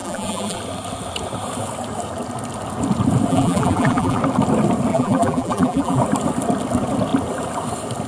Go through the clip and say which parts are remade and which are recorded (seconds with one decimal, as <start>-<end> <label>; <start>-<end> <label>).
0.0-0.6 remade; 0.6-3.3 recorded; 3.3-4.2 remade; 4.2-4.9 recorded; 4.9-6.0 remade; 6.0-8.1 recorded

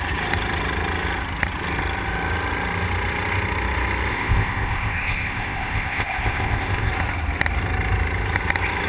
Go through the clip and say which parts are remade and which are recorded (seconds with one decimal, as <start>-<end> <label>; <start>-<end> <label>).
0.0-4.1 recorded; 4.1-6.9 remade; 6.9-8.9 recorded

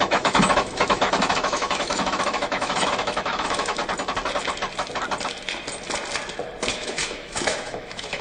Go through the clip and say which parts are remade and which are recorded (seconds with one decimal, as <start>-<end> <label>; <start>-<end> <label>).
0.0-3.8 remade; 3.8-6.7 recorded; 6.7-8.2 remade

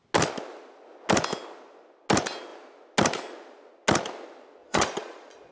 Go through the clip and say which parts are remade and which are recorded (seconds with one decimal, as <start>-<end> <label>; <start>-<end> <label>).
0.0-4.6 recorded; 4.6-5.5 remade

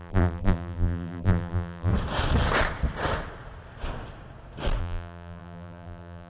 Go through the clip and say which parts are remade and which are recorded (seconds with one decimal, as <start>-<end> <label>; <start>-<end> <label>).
0.0-1.9 remade; 1.9-4.8 recorded; 4.8-6.3 remade